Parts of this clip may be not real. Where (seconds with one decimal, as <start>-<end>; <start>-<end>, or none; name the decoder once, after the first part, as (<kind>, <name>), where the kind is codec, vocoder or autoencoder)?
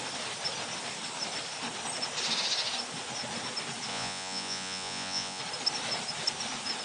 3.9-5.4 (vocoder, Vocos)